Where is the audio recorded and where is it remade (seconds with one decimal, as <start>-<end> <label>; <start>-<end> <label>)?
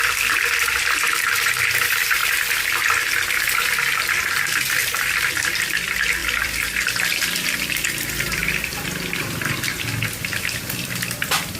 0.0-2.2 remade; 2.2-4.0 recorded; 4.0-11.6 remade